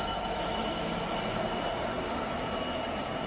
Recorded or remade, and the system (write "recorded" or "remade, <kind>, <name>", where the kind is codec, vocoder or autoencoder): recorded